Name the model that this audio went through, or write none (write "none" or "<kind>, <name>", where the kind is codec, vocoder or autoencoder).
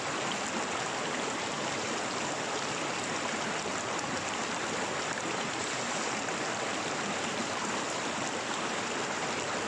none